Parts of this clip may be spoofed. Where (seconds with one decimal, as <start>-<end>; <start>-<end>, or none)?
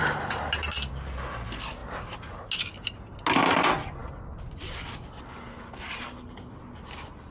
none